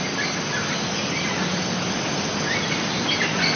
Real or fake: real